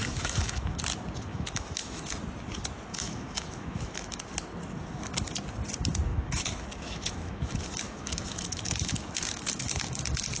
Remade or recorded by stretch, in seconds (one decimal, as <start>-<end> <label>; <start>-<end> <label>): 0.0-0.8 remade; 0.8-1.3 recorded; 1.3-2.0 remade; 2.0-2.9 recorded; 2.9-4.2 remade; 4.2-6.1 recorded; 6.1-10.0 remade; 10.0-10.4 recorded